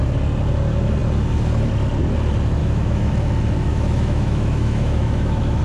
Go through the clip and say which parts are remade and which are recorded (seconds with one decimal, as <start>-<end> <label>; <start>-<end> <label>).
0.0-2.6 recorded; 2.6-3.1 remade; 3.1-3.7 recorded; 3.7-5.6 remade